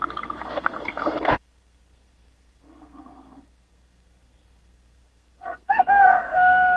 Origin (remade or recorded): remade